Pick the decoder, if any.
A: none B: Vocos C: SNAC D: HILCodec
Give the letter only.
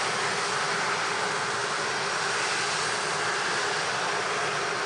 A